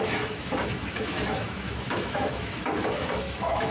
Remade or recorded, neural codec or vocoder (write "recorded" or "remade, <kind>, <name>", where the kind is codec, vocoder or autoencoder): remade, autoencoder, DAC-VAE